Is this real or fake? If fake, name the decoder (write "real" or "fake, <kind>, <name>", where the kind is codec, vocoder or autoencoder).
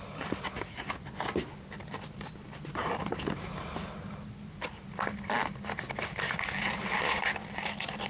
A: real